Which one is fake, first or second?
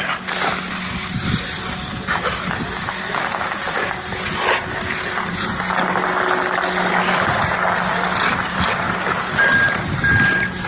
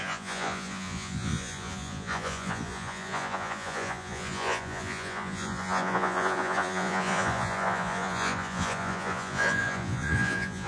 second